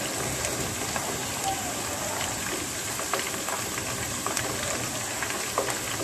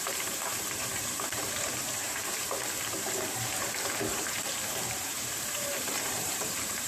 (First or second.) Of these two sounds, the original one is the first